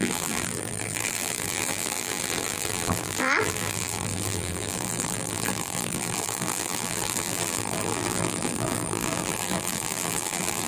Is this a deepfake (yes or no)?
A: yes